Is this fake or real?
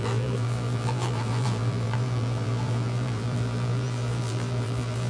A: fake